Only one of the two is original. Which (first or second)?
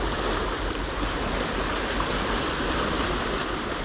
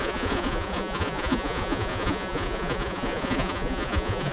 first